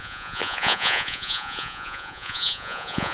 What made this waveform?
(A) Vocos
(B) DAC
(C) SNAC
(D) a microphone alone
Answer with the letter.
A